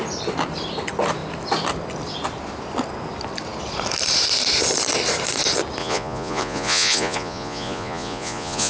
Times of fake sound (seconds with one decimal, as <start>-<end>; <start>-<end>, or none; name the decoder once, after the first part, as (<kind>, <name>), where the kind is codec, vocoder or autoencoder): 5.8-8.7 (vocoder, Vocos)